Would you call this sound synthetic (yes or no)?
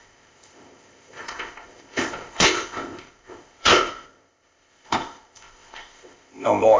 yes